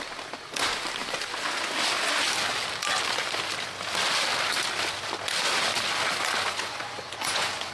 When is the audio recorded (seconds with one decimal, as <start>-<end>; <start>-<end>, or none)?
0.0-6.5